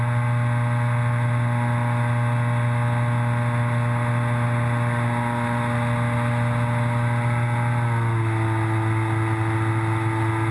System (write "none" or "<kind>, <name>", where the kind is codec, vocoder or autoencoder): none